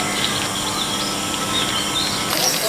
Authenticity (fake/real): real